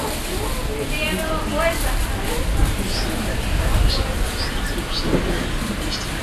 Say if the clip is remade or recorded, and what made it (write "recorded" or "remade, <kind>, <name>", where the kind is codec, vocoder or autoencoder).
recorded